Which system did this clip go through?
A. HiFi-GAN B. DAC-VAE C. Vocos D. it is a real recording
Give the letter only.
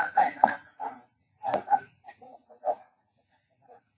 C